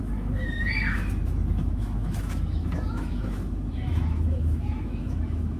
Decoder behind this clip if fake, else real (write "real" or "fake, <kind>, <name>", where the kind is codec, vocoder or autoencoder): fake, autoencoder, DAC-VAE